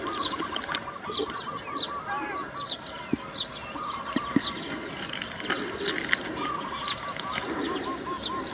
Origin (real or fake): real